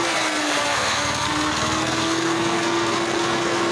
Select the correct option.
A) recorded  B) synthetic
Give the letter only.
B